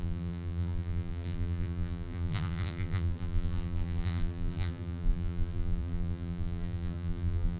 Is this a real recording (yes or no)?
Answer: no